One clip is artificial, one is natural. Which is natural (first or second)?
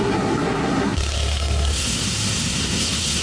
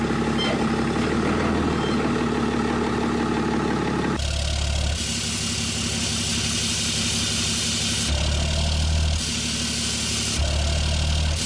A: second